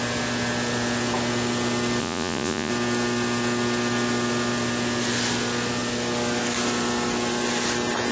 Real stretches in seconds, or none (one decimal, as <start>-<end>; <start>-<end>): 0.0-2.0; 2.7-8.1